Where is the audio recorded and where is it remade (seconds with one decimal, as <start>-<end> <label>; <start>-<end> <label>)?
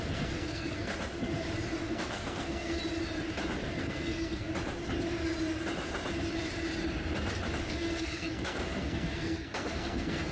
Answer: 0.0-0.9 remade; 0.9-1.9 recorded; 1.9-2.8 remade; 2.8-3.8 recorded; 3.8-4.5 remade; 4.5-7.6 recorded; 7.6-10.3 remade